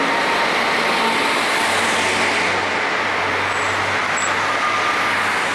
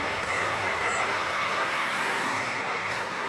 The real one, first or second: first